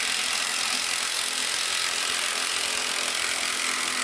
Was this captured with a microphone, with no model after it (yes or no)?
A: yes